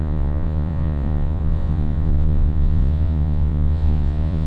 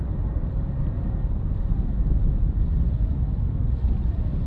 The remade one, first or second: first